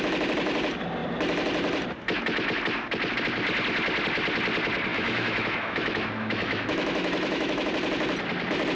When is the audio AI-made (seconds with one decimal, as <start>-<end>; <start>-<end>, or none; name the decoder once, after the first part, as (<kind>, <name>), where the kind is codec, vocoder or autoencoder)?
4.9-7.7 (autoencoder, DAC-VAE)